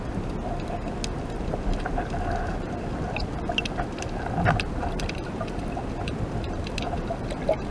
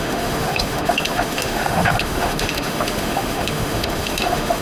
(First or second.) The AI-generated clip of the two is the second